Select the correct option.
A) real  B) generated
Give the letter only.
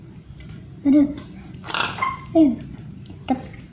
B